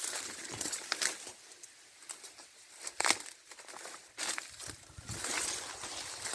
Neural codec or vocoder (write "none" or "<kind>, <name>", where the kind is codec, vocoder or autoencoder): none